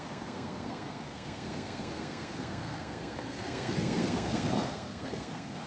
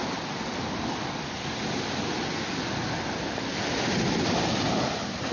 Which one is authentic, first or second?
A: second